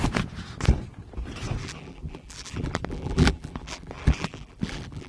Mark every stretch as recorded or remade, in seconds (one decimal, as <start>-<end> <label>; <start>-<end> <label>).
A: 0.0-1.6 recorded; 1.6-5.1 remade